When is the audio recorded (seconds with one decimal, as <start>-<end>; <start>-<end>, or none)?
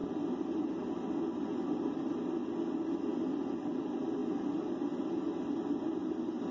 0.0-6.5